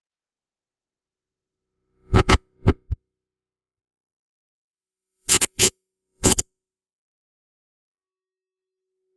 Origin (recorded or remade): remade